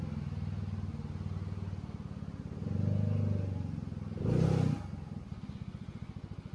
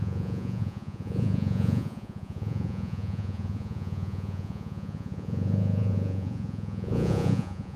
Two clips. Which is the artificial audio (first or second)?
second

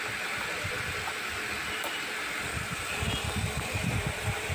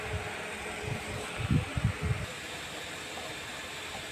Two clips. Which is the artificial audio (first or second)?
first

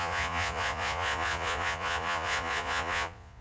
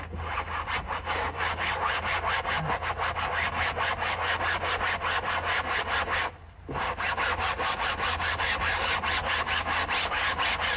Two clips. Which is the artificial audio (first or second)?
first